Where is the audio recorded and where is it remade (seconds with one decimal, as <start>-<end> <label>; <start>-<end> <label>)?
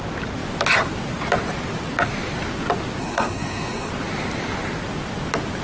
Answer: 0.0-3.0 recorded; 3.0-3.9 remade; 3.9-5.6 recorded